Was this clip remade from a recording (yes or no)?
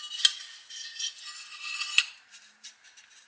no